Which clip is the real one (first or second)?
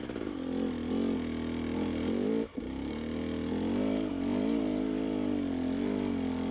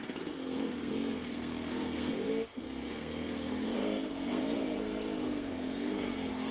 first